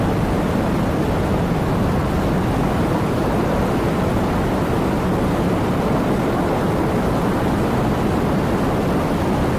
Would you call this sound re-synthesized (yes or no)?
no